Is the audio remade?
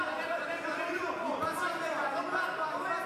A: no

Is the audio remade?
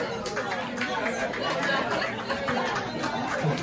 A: no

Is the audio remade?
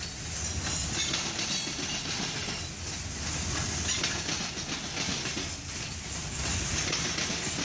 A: no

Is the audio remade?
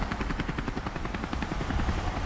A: no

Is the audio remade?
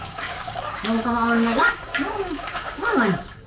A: yes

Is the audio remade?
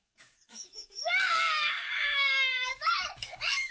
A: yes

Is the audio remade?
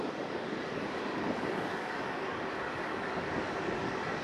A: yes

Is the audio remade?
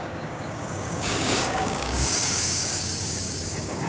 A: yes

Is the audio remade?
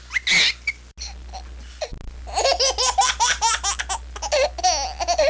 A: no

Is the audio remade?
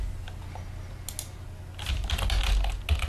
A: no